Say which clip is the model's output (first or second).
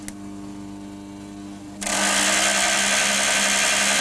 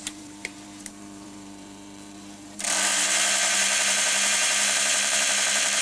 second